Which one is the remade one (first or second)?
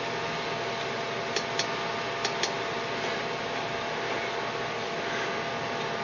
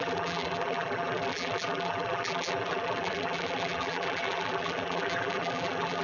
second